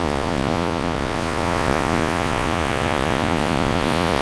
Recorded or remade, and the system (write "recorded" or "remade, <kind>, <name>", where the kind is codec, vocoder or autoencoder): remade, vocoder, Vocos